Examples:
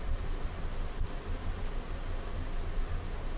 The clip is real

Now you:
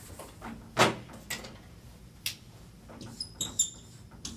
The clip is real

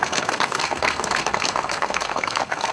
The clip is fake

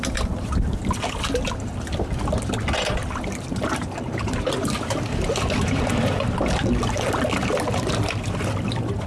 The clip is real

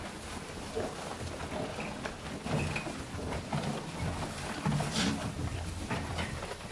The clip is real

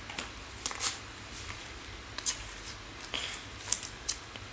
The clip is real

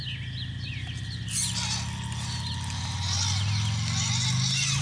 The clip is real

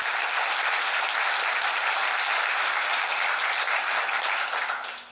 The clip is real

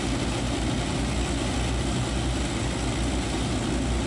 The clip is real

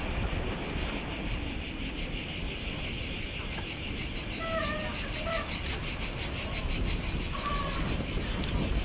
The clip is real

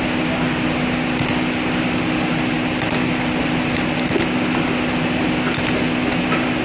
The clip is real